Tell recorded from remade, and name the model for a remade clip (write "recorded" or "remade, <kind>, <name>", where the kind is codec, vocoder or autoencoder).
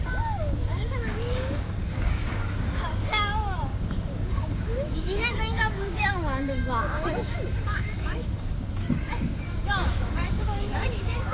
remade, codec, DAC